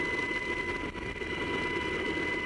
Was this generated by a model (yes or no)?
no